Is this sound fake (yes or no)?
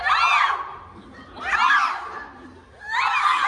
no